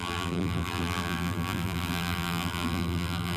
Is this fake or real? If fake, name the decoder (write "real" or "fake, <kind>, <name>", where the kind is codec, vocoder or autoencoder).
fake, vocoder, BigVGAN v2